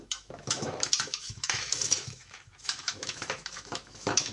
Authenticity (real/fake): fake